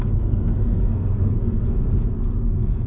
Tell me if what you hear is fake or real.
fake